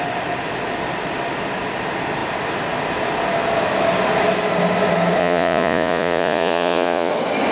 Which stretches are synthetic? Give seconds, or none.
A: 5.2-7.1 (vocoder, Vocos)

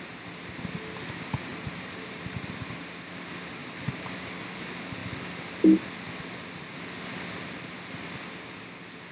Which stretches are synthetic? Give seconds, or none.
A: 1.5-2.9 (vocoder, BigVGAN v2); 3.6-4.2

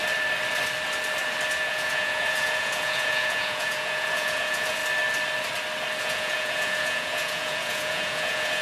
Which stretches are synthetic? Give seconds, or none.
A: 1.6-4.8 (vocoder, Vocos); 6.0-8.6